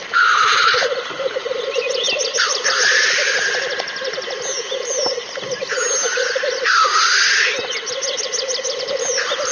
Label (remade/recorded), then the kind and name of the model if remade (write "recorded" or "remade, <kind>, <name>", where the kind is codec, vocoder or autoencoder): recorded